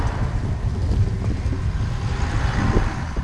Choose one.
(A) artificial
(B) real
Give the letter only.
B